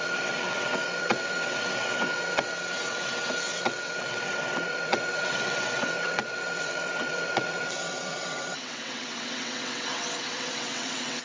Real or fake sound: fake